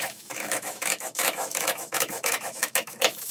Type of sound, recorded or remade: remade